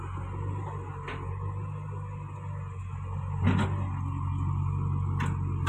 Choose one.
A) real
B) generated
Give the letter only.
A